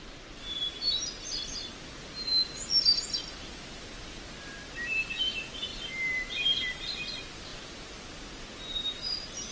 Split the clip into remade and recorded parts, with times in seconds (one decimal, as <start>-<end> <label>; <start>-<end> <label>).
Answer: 0.0-9.5 recorded